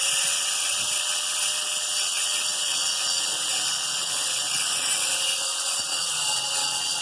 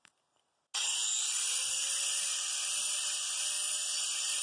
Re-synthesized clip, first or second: first